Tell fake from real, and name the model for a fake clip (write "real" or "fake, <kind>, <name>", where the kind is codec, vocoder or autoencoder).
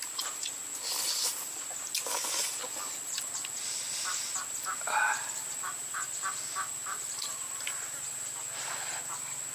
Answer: real